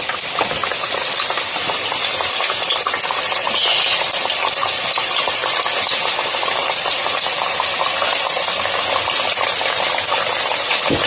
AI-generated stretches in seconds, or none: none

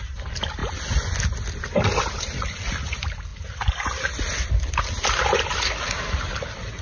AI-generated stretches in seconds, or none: none

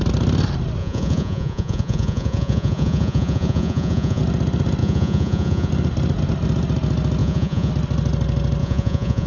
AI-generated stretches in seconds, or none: 0.8-4.2 (vocoder, Vocos); 4.8-5.7; 7.2-7.7; 8.6-9.3

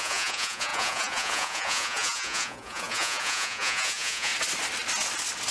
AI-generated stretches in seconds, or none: 0.0-4.3 (vocoder, Vocos)

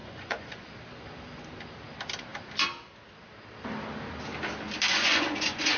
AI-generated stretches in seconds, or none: 0.0-0.7 (vocoder, Vocos); 4.9-5.8